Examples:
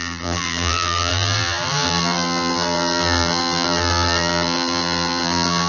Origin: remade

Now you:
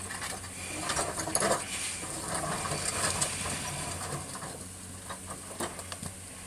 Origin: recorded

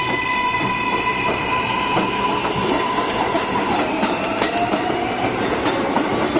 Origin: remade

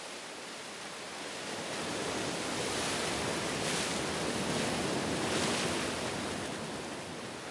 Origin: recorded